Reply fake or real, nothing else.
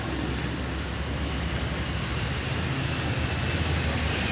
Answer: real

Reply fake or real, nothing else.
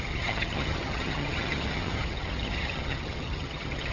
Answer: fake